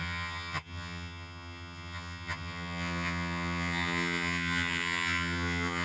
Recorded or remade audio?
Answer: remade